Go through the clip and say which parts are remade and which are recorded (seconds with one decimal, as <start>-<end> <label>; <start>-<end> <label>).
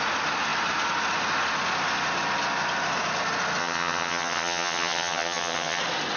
0.0-3.6 recorded; 3.6-5.8 remade; 5.8-6.2 recorded